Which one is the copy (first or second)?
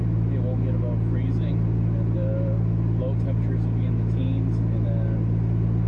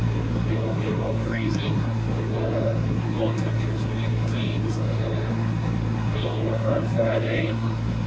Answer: second